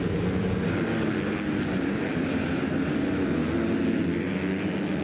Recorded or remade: recorded